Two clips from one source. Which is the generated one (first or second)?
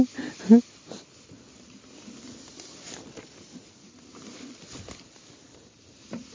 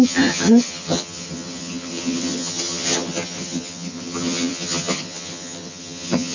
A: second